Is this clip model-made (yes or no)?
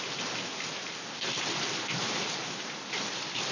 no